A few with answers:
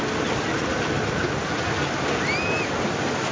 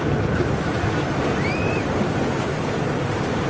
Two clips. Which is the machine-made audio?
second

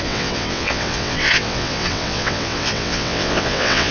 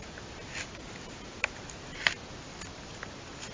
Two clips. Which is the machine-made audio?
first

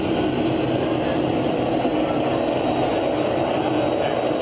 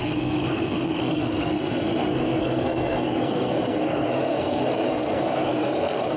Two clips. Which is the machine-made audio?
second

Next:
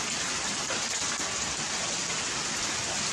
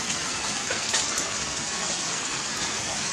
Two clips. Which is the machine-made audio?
second